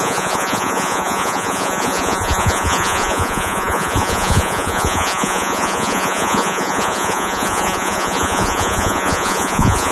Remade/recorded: remade